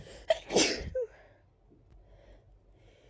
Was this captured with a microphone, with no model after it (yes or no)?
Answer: yes